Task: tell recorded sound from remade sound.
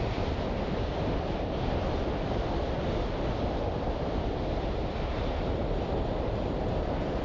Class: recorded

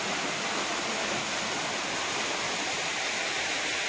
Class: recorded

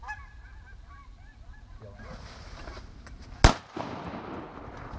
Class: recorded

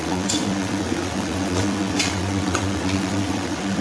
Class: remade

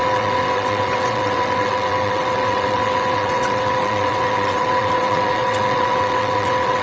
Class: remade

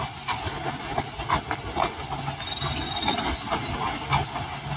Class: recorded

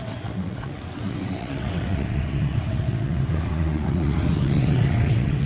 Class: remade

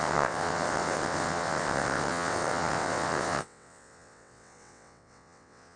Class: remade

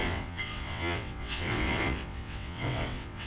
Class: remade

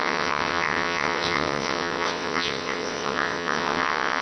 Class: remade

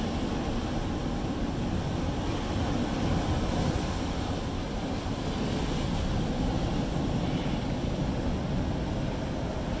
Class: recorded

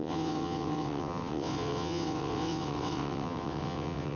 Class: remade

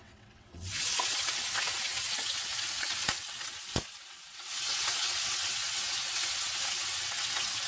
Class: remade